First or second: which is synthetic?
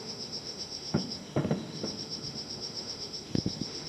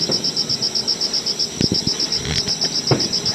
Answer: first